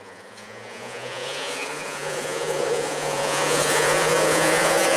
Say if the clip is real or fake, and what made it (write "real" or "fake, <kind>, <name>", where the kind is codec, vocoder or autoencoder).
fake, vocoder, Vocos